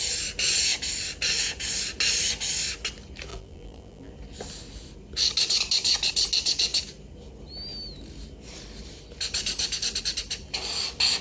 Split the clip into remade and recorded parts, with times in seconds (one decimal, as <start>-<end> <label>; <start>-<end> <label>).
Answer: 0.0-3.3 recorded; 3.3-4.1 remade; 4.1-11.2 recorded

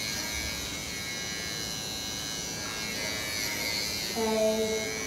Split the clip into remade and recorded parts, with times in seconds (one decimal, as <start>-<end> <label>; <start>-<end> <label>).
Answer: 0.0-5.1 recorded

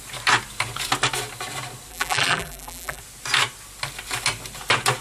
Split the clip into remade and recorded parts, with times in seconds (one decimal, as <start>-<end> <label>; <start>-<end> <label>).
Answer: 0.0-1.9 recorded; 1.9-3.0 remade; 3.0-5.0 recorded